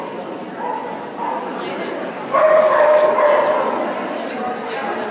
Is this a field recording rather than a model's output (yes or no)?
yes